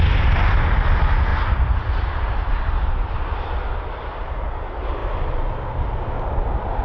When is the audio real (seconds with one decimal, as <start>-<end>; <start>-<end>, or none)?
0.0-6.8